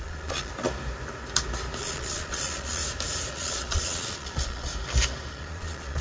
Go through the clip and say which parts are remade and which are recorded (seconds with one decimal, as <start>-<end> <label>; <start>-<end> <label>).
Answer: 0.0-0.5 remade; 0.5-1.8 recorded; 1.8-2.8 remade; 2.8-3.3 recorded; 3.3-4.7 remade; 4.7-5.3 recorded; 5.3-6.0 remade